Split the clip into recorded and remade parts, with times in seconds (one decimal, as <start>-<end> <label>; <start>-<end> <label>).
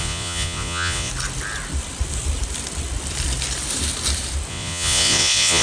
0.0-1.1 remade; 1.1-4.5 recorded; 4.5-5.6 remade